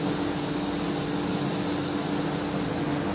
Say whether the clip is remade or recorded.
recorded